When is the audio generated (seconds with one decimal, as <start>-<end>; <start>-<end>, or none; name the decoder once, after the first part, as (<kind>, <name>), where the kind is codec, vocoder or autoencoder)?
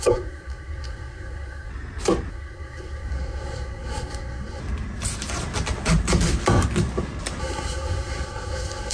0.0-1.7 (codec, SNAC); 2.3-4.6; 7.4-8.9